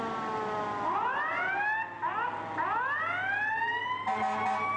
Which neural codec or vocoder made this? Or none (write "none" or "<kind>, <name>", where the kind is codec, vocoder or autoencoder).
none